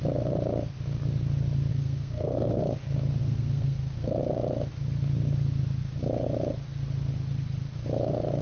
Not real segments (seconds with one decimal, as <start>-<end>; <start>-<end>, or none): 1.7-2.6; 3.2-4.2